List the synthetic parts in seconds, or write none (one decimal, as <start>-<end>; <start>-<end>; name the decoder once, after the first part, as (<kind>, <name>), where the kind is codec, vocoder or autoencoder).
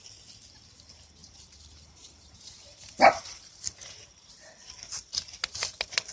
1.2-4.5 (vocoder, BigVGAN v2)